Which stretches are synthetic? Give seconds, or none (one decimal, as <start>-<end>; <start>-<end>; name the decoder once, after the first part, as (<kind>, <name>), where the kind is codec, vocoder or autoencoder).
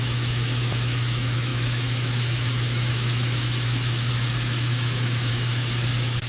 0.0-6.3 (autoencoder, DAC-VAE)